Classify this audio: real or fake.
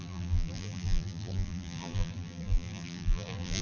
fake